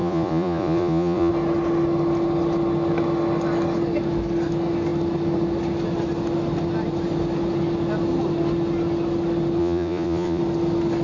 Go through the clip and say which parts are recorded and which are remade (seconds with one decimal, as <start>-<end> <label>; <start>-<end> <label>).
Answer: 0.0-1.3 remade; 1.3-9.6 recorded; 9.6-10.4 remade; 10.4-11.0 recorded